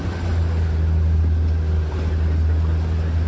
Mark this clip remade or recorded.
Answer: recorded